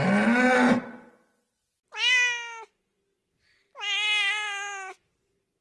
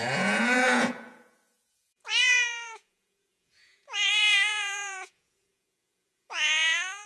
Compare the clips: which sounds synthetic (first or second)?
second